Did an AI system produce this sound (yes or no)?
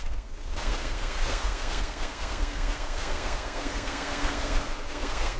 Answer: yes